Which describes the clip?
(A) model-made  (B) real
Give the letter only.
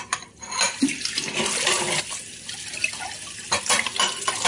B